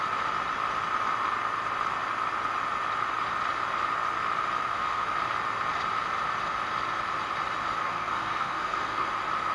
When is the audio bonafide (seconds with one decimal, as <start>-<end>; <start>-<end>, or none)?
0.0-4.6; 5.1-7.8; 9.1-9.5